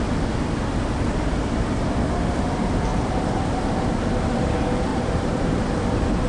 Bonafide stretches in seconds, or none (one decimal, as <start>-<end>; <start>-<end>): 0.0-2.9; 3.9-4.9; 5.6-6.3